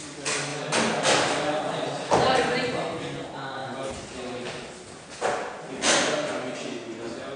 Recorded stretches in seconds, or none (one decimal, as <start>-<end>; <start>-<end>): 0.0-7.4